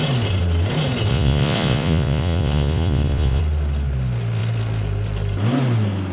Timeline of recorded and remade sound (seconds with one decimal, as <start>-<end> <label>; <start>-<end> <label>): 0.0-1.1 recorded; 1.1-3.4 remade; 3.4-6.1 recorded